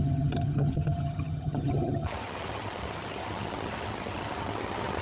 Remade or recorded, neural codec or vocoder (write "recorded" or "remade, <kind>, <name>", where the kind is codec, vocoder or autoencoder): remade, vocoder, HiFi-GAN